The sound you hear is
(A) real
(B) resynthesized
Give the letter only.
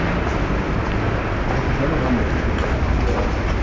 A